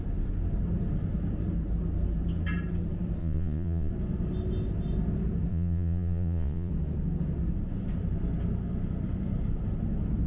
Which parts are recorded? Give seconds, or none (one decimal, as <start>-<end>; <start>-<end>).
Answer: 0.0-3.2; 3.9-5.5; 6.7-10.3